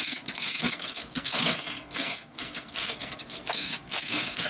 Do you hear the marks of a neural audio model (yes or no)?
yes